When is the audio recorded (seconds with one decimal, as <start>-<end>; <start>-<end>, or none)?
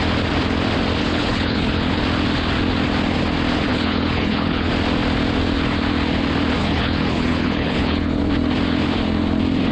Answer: 0.0-1.0; 2.0-3.7; 4.7-6.6; 8.2-9.7